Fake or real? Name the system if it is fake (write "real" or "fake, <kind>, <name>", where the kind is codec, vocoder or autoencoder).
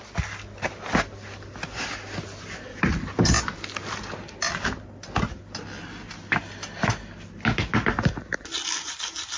real